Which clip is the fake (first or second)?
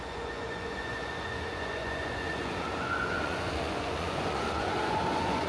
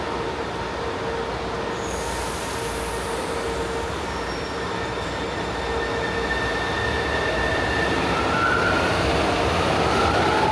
first